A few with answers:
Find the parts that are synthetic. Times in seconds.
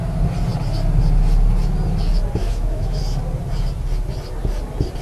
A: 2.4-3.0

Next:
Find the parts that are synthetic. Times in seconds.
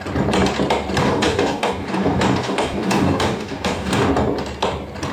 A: 1.0-4.1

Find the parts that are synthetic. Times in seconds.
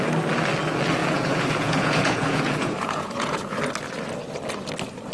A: 1.0-3.6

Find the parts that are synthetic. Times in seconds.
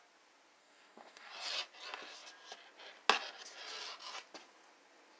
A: 0.6-1.3